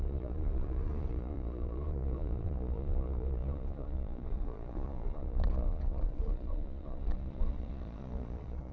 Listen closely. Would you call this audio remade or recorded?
remade